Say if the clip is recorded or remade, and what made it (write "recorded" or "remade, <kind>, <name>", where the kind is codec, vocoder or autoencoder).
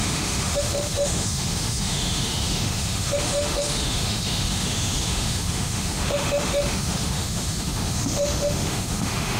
remade, autoencoder, DAC-VAE